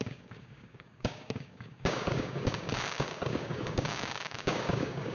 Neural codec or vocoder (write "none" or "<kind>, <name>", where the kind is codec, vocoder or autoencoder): codec, DAC